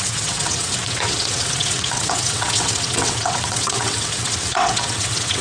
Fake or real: fake